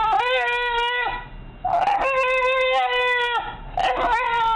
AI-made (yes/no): no